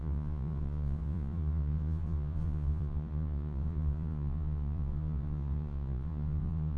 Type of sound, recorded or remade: remade